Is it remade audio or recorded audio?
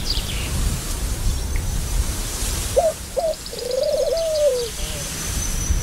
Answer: remade